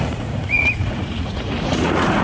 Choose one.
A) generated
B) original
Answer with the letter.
A